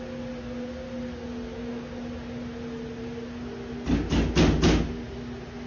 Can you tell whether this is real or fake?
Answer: real